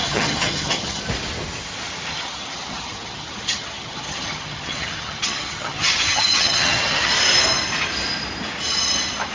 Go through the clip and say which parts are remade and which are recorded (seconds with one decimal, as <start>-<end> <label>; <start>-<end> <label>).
0.0-1.0 remade; 1.0-2.1 recorded; 2.1-7.1 remade; 7.1-9.3 recorded